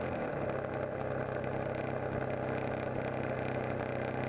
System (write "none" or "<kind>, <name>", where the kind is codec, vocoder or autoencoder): none